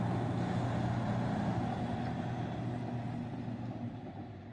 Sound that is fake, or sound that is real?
real